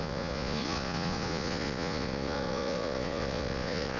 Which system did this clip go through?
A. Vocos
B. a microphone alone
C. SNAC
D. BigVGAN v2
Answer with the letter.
A